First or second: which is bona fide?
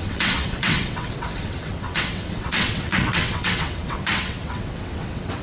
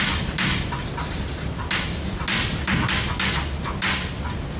second